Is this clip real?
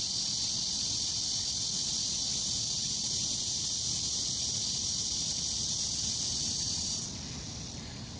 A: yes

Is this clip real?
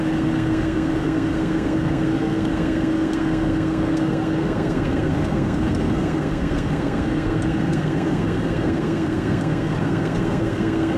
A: no